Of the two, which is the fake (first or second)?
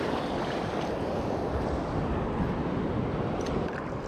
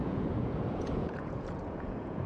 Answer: second